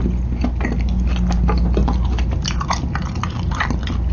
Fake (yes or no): no